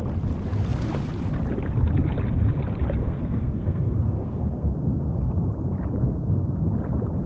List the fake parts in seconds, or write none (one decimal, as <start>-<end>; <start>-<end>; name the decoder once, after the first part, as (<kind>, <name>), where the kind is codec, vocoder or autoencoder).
3.0-5.3 (codec, SNAC); 6.0-6.6